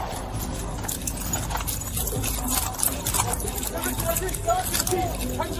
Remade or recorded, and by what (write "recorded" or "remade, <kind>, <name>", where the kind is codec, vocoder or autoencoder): recorded